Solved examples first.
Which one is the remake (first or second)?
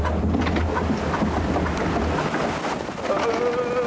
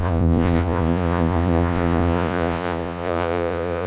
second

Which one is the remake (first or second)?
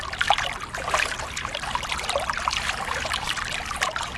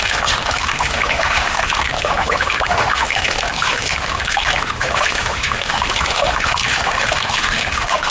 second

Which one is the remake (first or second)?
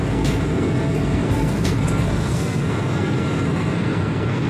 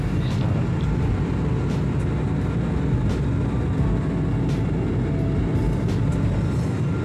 first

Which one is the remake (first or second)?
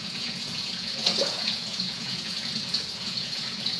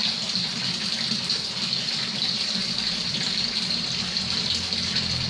first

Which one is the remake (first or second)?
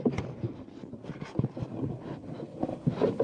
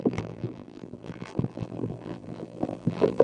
second